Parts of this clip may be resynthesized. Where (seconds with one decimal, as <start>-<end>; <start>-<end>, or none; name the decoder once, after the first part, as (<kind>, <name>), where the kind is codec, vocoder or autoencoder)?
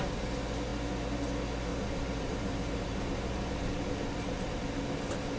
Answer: 1.7-4.5 (vocoder, BigVGAN v2)